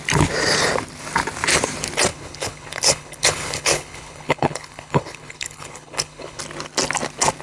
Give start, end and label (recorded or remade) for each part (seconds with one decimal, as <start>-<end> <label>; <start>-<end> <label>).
0.0-2.1 recorded; 2.1-6.4 remade; 6.4-7.4 recorded